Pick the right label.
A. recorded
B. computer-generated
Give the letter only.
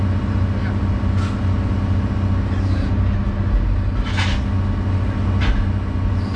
A